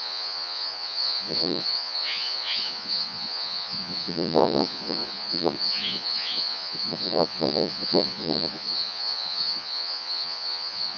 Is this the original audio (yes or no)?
no